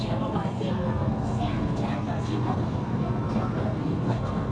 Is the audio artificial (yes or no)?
yes